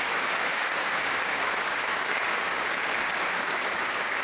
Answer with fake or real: fake